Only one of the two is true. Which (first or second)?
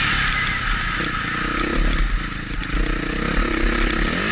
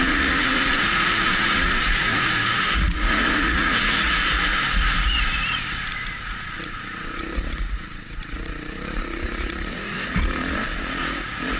first